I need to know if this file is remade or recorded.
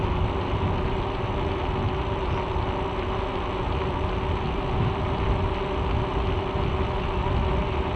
recorded